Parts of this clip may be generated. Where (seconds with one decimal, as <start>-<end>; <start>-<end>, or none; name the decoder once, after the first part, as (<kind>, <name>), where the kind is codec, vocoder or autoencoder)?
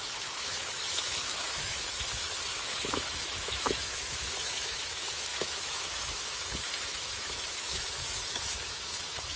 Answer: 0.0-9.4 (autoencoder, DAC-VAE)